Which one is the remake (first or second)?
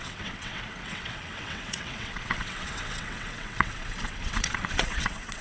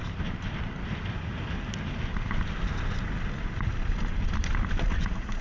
first